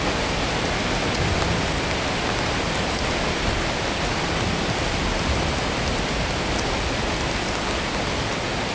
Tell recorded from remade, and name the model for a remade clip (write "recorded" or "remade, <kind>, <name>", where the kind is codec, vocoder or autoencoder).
recorded